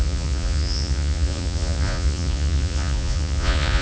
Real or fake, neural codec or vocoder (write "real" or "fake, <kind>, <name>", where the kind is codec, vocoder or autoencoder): fake, vocoder, Vocos